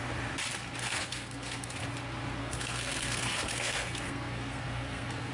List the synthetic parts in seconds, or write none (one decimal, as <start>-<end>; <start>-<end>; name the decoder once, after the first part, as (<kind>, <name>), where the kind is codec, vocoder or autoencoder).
0.8-1.8 (codec, SNAC); 2.4-5.3